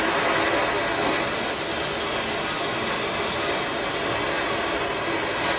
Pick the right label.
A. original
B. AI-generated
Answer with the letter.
A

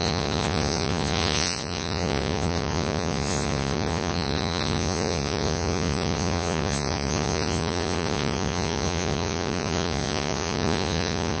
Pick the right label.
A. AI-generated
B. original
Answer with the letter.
A